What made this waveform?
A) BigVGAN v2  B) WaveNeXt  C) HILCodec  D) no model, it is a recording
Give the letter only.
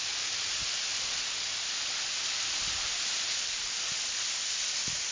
D